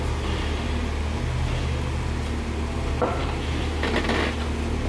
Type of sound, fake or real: real